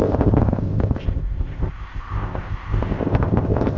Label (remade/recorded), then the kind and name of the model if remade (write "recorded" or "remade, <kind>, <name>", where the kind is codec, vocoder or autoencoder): remade, codec, ZipCodec